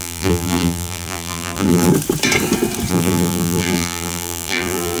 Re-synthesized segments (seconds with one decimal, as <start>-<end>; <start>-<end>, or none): 0.0-1.9; 2.9-5.0